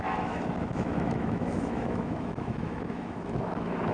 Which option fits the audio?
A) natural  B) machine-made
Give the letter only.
B